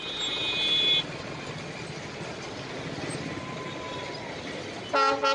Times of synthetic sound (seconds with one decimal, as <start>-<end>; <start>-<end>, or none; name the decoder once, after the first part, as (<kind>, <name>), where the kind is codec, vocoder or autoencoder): none

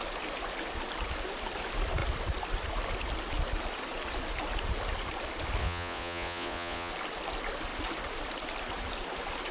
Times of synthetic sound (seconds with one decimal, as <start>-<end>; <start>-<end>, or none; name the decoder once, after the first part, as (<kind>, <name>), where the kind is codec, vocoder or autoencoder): 5.6-6.9 (vocoder, Vocos)

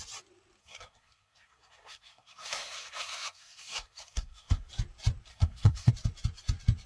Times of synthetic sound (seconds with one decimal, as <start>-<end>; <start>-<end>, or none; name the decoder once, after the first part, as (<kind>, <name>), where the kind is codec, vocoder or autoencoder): 0.6-4.7 (codec, SNAC); 5.3-5.9

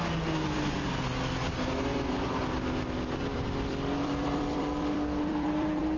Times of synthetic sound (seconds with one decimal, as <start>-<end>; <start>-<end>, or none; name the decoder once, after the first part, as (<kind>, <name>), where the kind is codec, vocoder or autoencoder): 1.9-2.4 (vocoder, BigVGAN v2); 3.3-6.0

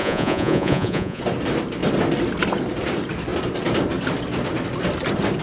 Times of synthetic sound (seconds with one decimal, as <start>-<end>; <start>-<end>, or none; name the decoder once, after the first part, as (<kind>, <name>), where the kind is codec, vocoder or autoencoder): 0.0-1.2 (vocoder, Vocos)